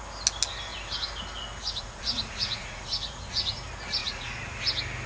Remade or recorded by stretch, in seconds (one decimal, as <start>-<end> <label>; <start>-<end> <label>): 0.0-1.6 recorded; 1.6-3.6 remade; 3.6-4.0 recorded; 4.0-4.6 remade; 4.6-5.1 recorded